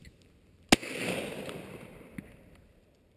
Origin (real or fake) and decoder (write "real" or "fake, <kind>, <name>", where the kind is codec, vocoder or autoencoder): real